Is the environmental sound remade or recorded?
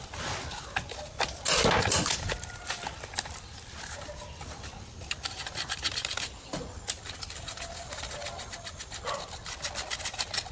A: recorded